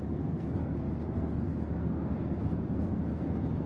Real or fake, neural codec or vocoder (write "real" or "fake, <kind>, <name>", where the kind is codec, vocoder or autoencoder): fake, codec, SNAC